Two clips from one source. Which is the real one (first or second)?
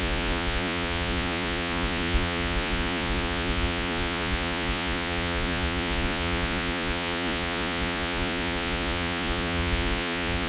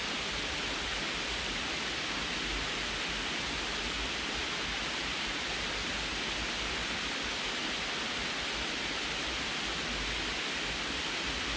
second